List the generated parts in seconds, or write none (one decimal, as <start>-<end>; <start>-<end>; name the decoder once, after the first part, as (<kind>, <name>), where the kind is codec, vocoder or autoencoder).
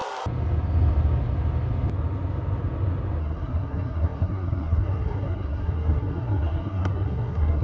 3.2-7.6 (codec, SNAC)